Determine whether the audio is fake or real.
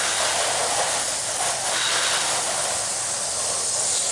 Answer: real